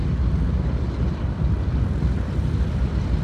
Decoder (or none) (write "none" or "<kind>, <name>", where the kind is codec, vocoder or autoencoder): none